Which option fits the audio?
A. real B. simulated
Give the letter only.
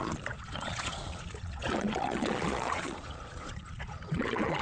B